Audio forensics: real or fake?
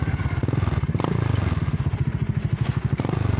real